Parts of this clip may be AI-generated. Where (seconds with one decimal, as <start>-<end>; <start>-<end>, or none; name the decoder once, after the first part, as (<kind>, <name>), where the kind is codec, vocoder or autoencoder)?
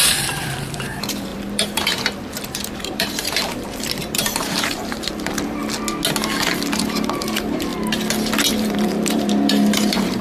0.0-5.6 (vocoder, BigVGAN v2); 6.8-7.7; 8.5-10.2